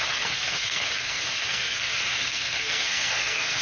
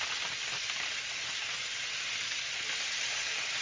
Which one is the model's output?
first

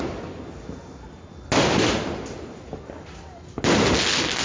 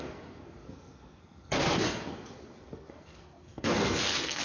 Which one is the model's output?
second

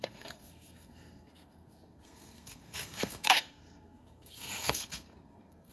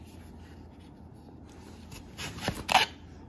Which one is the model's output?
first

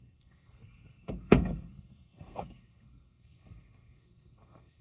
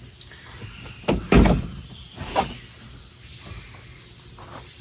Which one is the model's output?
first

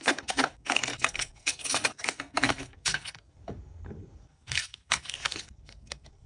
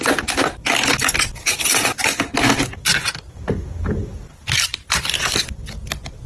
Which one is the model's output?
first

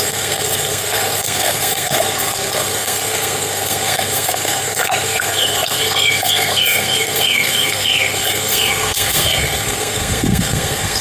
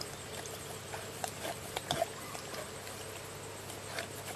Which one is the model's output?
first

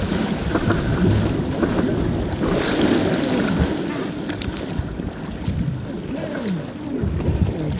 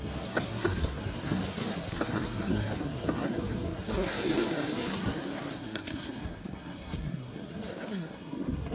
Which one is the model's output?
second